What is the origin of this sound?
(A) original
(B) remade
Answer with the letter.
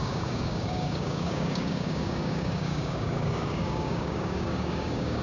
B